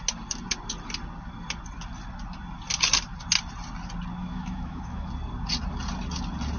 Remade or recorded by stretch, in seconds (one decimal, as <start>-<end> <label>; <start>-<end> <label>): 0.0-4.2 recorded; 4.2-5.1 remade; 5.1-6.6 recorded